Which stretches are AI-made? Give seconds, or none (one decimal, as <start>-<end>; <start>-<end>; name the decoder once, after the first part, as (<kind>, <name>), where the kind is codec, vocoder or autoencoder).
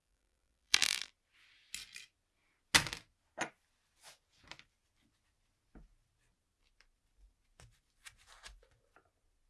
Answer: 0.0-1.1 (vocoder, BigVGAN v2)